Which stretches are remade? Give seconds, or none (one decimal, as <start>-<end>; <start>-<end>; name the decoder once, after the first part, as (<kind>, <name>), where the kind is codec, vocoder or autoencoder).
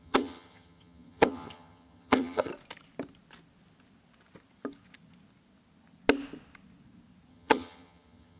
0.0-2.5 (vocoder, HiFi-GAN); 7.3-8.4